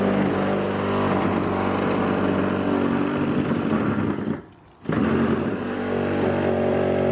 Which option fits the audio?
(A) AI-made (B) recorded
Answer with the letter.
B